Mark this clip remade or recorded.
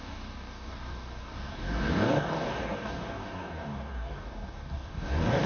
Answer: remade